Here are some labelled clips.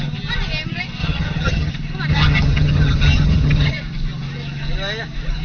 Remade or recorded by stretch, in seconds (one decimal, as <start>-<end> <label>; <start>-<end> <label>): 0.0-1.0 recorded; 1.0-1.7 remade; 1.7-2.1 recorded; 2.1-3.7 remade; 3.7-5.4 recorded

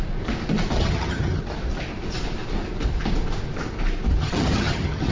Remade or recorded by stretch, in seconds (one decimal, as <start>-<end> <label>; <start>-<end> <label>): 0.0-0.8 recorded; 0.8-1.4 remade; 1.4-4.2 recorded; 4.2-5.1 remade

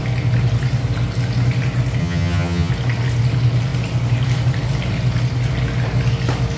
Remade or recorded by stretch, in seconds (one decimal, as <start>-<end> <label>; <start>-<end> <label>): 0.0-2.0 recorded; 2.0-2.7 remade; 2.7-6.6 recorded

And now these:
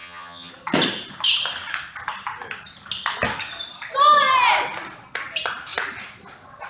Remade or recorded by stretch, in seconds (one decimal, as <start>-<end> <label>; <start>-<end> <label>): 0.0-0.5 remade; 0.5-6.7 recorded

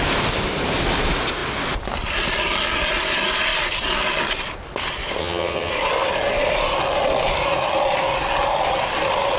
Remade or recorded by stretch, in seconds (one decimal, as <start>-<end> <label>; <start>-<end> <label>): 0.0-5.2 recorded; 5.2-5.7 remade; 5.7-9.4 recorded

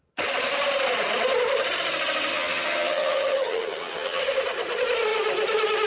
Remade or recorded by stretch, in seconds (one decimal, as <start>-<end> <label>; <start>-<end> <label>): 0.0-2.3 recorded; 2.3-4.2 remade; 4.2-5.9 recorded

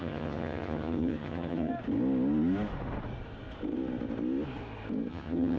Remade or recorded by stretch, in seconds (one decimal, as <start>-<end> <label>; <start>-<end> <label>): 0.0-1.7 remade; 1.7-5.1 recorded; 5.1-5.6 remade